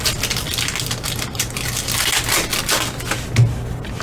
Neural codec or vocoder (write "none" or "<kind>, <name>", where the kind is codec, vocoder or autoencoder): none